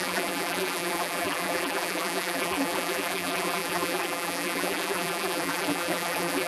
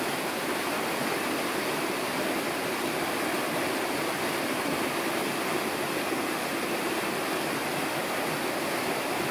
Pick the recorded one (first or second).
second